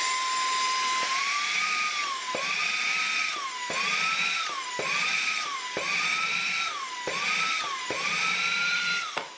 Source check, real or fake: fake